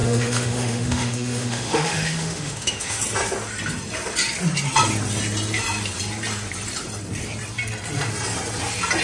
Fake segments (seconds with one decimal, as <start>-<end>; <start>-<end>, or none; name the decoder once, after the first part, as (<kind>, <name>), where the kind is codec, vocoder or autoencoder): 0.0-3.0 (autoencoder, DAC-VAE)